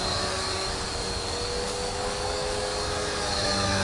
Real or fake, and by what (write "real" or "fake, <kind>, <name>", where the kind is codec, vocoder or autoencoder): fake, codec, DAC